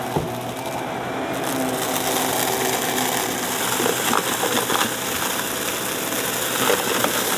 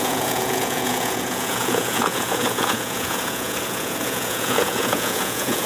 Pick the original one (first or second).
first